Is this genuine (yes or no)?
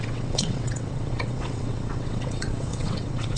no